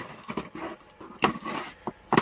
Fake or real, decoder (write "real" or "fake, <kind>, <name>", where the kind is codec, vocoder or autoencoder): real